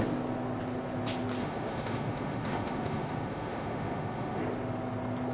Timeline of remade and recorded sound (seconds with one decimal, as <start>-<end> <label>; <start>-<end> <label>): 0.0-1.4 recorded; 1.4-4.4 remade; 4.4-5.3 recorded